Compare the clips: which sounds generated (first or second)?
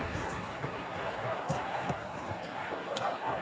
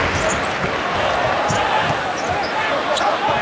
first